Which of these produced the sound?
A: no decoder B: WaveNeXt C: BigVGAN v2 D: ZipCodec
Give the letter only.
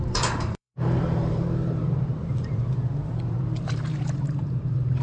C